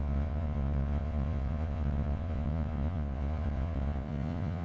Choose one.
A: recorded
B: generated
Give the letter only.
B